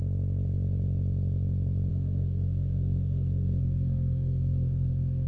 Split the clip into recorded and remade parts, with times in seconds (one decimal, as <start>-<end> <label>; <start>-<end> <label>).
0.0-1.9 recorded; 1.9-5.3 remade